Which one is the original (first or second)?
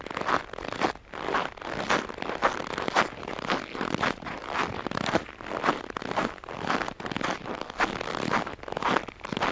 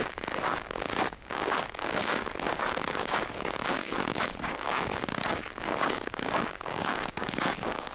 first